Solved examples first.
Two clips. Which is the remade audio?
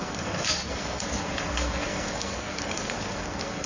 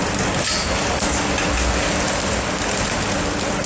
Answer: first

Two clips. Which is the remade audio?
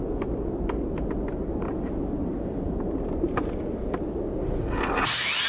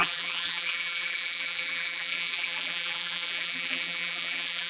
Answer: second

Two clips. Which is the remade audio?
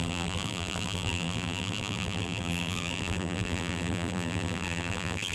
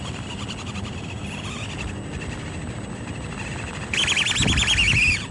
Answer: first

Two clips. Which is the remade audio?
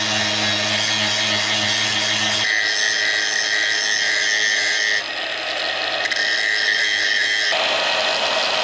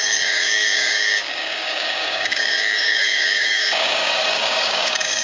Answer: second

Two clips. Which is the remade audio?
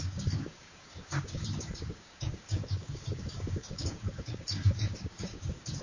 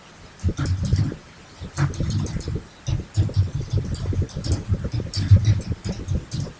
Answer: first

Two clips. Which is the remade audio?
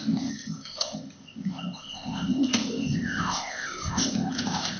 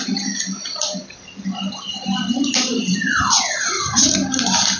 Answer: first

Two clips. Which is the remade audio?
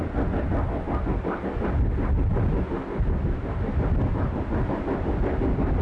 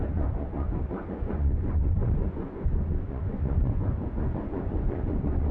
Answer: second